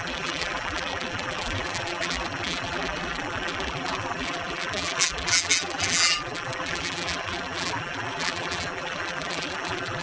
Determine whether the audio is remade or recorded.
remade